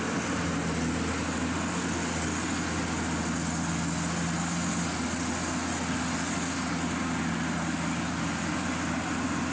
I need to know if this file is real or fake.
real